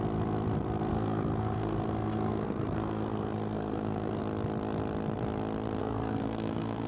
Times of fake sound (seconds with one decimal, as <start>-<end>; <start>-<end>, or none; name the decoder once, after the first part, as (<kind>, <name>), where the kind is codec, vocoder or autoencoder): 0.9-4.2 (codec, SNAC); 5.8-6.9